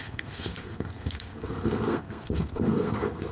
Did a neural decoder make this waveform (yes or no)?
yes